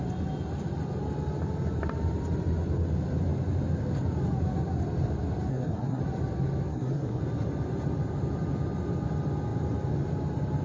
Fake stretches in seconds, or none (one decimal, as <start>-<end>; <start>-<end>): 5.5-6.0; 6.7-7.2